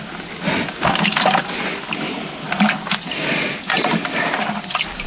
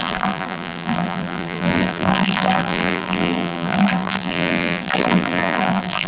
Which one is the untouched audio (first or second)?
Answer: first